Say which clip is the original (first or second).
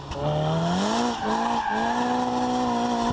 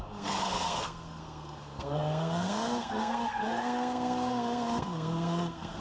first